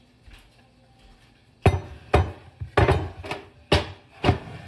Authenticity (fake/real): real